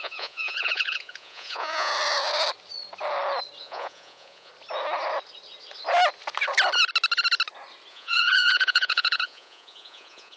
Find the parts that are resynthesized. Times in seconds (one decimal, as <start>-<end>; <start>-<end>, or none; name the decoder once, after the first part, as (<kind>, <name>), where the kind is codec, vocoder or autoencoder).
0.0-1.9 (vocoder, Vocos); 3.6-4.5; 7.9-10.4